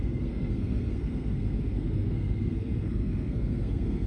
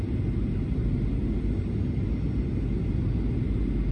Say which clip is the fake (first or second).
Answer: first